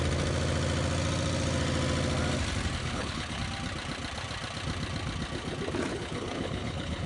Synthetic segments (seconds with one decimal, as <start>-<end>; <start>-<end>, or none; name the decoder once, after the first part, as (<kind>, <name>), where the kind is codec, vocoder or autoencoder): 2.8-3.4 (codec, HILCodec); 5.9-7.1